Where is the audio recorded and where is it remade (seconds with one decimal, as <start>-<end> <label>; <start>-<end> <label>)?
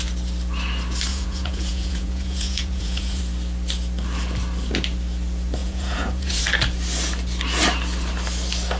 0.0-1.1 recorded; 1.1-3.2 remade; 3.2-5.6 recorded; 5.6-6.4 remade; 6.4-8.8 recorded